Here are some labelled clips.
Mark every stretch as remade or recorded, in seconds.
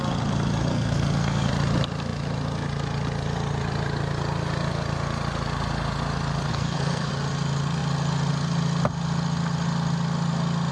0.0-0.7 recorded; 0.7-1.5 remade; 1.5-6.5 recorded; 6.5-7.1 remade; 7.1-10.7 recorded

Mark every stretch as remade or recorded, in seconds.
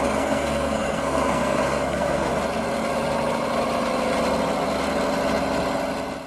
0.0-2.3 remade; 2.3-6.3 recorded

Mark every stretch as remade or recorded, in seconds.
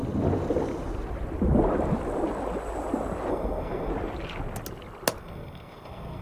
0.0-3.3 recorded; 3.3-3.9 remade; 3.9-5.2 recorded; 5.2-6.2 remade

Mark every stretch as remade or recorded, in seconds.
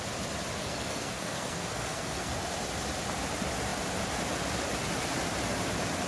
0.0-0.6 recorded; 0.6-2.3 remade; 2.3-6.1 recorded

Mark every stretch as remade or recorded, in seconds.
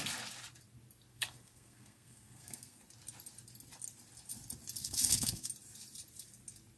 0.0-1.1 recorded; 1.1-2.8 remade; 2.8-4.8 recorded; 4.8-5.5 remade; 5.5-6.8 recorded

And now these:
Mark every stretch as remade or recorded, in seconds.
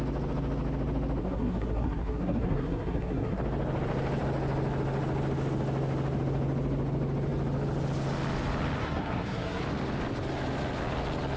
0.0-1.2 recorded; 1.2-3.4 remade; 3.4-8.8 recorded; 8.8-9.6 remade; 9.6-11.4 recorded